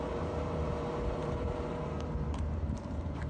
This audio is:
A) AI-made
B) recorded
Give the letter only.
A